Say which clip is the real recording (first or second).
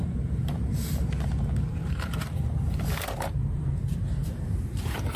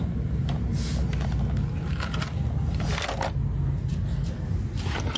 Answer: second